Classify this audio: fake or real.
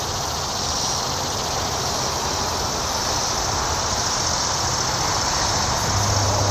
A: real